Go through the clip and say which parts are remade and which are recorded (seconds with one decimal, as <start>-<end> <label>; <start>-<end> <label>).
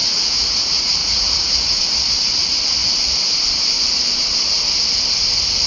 0.0-0.6 remade; 0.6-1.0 recorded; 1.0-1.8 remade; 1.8-5.7 recorded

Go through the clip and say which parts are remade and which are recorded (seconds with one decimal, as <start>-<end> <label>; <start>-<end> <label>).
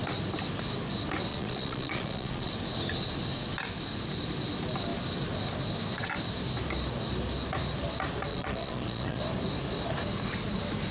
0.0-1.3 recorded; 1.3-2.5 remade; 2.5-8.3 recorded; 8.3-9.2 remade; 9.2-10.9 recorded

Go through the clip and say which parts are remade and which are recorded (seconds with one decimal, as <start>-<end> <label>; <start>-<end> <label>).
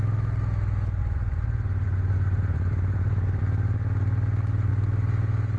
0.0-1.0 recorded; 1.0-3.4 remade; 3.4-5.6 recorded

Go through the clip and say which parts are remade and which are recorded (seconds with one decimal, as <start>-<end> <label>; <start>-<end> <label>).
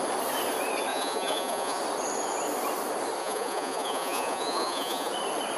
0.0-0.9 recorded; 0.9-1.8 remade; 1.8-3.2 recorded; 3.2-5.1 remade; 5.1-5.6 recorded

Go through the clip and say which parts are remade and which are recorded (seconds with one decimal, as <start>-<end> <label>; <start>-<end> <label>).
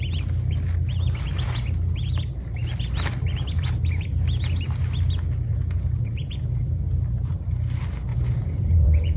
0.0-5.5 recorded; 5.5-6.6 remade; 6.6-8.1 recorded; 8.1-9.2 remade